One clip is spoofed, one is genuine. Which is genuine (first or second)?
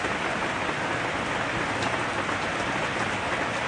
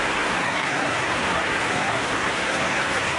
first